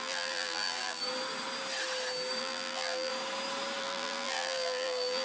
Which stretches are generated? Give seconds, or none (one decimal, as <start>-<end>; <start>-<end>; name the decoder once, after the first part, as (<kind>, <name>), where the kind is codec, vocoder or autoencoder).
0.0-1.0 (vocoder, BigVGAN v2); 2.4-3.1; 3.8-5.2